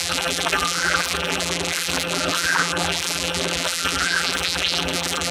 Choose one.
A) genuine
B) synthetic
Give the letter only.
B